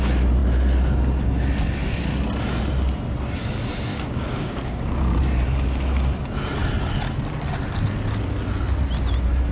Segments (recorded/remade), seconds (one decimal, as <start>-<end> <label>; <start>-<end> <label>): 0.0-3.9 recorded; 3.9-5.2 remade; 5.2-9.5 recorded

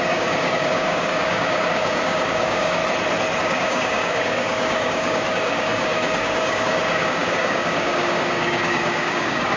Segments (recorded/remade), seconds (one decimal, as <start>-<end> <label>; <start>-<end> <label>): 0.0-2.8 remade; 2.8-3.4 recorded; 3.4-9.6 remade

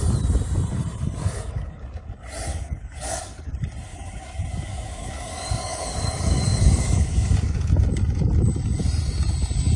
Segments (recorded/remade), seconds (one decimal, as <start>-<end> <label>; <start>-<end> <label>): 0.0-1.2 recorded; 1.2-1.8 remade; 1.8-2.5 recorded; 2.5-3.5 remade; 3.5-3.9 recorded; 3.9-7.7 remade; 7.7-9.8 recorded

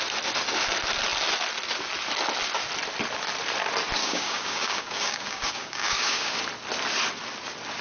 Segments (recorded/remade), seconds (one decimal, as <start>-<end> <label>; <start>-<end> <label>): 0.0-4.0 recorded; 4.0-6.4 remade; 6.4-7.8 recorded

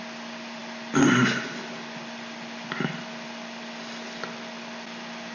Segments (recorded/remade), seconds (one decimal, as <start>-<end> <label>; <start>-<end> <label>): 0.0-5.3 recorded

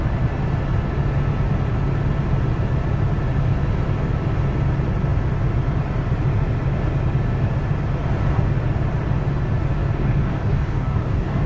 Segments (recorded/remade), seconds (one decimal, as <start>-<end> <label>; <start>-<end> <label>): 0.0-9.8 recorded; 9.8-11.5 remade